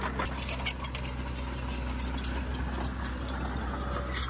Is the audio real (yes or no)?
yes